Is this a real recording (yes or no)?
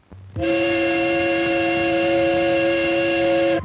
yes